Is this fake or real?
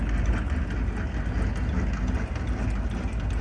real